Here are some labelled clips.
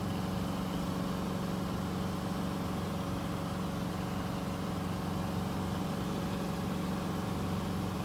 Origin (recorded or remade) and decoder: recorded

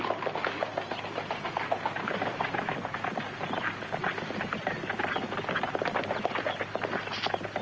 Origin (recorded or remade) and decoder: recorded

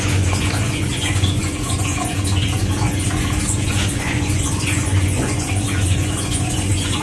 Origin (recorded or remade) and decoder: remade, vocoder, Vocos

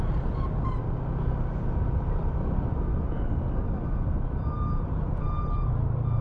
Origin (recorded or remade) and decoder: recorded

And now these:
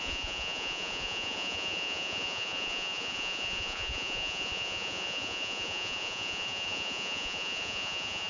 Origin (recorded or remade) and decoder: remade, vocoder, Vocos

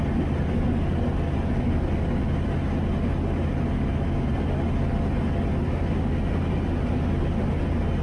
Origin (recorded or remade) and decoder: recorded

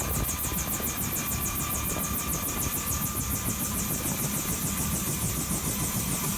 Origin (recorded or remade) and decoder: recorded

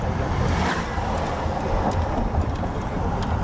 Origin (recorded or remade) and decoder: remade, vocoder, BigVGAN v2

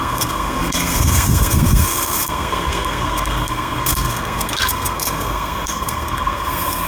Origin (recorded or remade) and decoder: remade, codec, SNAC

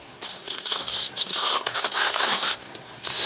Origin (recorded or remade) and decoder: remade, codec, SNAC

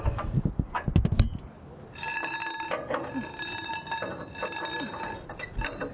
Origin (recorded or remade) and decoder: recorded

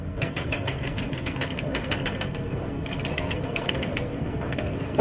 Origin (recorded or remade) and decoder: remade, codec, SNAC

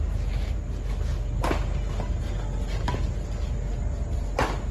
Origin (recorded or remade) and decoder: recorded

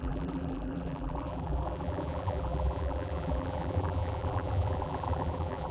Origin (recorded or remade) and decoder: remade, vocoder, BigVGAN v2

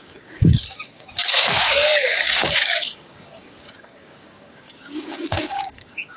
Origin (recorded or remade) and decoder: remade, codec, DAC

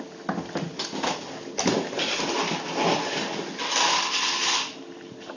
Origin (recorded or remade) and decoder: recorded